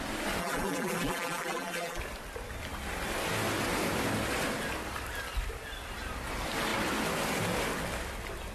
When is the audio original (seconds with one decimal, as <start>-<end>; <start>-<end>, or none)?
0.0-0.4; 2.0-8.5